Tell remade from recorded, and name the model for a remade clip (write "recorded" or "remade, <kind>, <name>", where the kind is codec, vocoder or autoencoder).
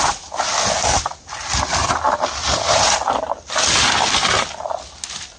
recorded